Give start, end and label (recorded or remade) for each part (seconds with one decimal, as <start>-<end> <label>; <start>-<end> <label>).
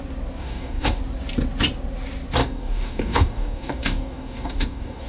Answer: 0.0-0.4 recorded; 0.4-1.0 remade; 1.0-2.4 recorded; 2.4-5.1 remade